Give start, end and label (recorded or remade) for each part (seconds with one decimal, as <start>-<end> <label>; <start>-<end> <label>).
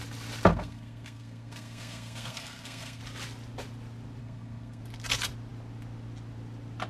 0.0-0.5 recorded; 0.5-3.0 remade; 3.0-4.2 recorded; 4.2-4.8 remade; 4.8-6.9 recorded